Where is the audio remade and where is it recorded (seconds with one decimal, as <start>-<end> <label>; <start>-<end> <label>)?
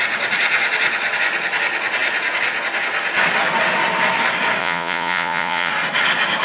0.0-4.6 recorded; 4.6-5.7 remade; 5.7-6.4 recorded